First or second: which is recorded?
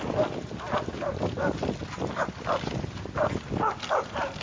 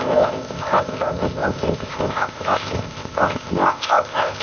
first